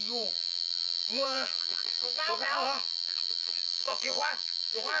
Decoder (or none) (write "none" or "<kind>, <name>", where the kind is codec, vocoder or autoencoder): vocoder, BigVGAN v2